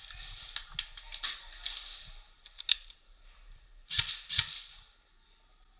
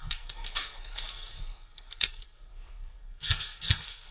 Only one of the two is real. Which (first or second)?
first